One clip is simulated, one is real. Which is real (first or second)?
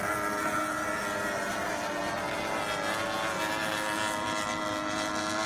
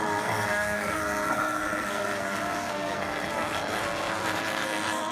first